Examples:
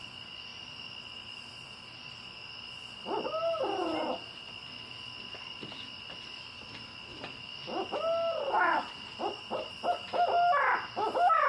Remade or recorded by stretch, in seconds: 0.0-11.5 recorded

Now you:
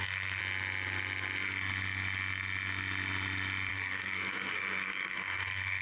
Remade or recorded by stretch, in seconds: 0.0-0.4 remade; 0.4-3.7 recorded; 3.7-5.8 remade

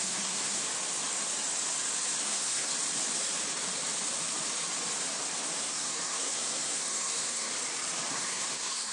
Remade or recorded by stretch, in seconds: 0.0-0.6 remade; 0.6-2.2 recorded; 2.2-2.7 remade; 2.7-5.6 recorded; 5.6-7.5 remade; 7.5-8.1 recorded; 8.1-8.9 remade